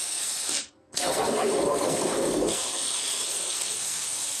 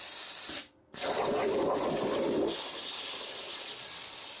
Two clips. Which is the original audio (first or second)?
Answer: second